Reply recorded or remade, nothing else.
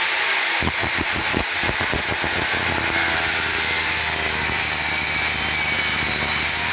remade